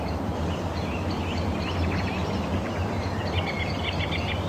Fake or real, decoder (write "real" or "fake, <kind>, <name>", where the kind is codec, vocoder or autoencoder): real